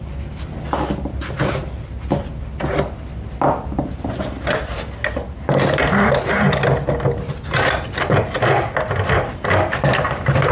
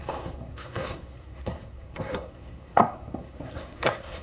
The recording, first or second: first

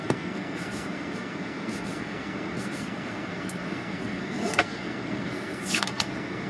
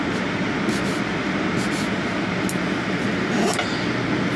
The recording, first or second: second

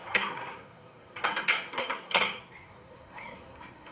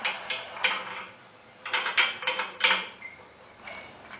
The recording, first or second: second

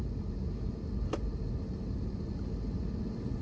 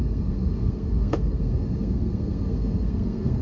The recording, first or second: first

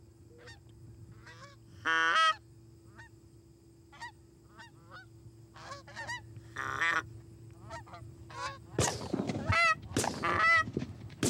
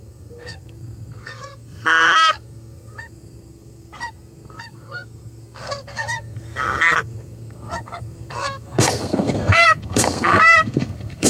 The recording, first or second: first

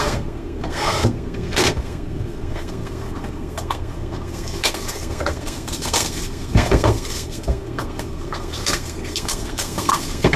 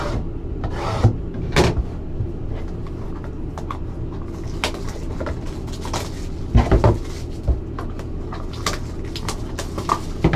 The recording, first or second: second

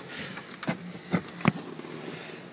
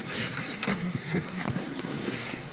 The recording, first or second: first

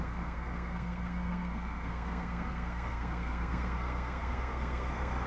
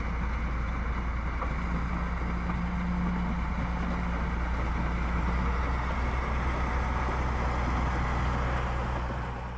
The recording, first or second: second